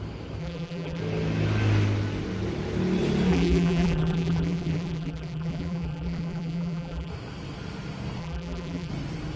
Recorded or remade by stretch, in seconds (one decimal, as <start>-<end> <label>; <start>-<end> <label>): 0.0-0.4 recorded; 0.4-1.0 remade; 1.0-3.3 recorded; 3.3-7.1 remade; 7.1-8.2 recorded; 8.2-8.9 remade; 8.9-9.4 recorded